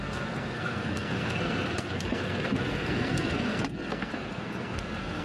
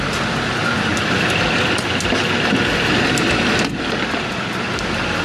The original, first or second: second